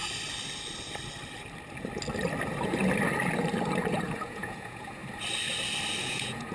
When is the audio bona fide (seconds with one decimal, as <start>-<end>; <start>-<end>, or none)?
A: 0.0-3.9; 5.0-6.0